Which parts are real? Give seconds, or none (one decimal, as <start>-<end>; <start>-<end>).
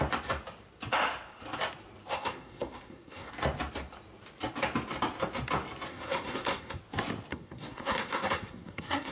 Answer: 0.0-2.1; 3.3-5.9; 6.8-7.3